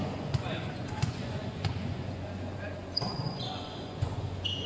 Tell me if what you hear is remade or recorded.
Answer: remade